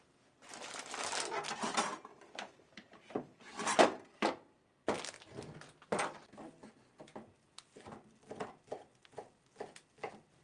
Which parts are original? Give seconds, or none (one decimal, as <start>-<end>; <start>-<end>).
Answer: 0.0-2.1; 3.8-10.4